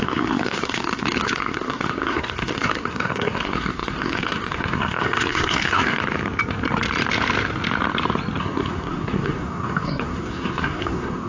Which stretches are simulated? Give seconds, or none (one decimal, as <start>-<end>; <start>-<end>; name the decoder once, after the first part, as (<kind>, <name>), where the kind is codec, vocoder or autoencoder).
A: 0.0-6.0 (codec, SNAC); 8.4-11.3